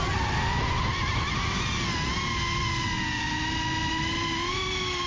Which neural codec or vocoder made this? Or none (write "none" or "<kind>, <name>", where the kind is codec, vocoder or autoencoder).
none